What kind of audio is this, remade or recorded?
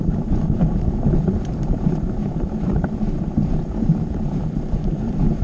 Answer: remade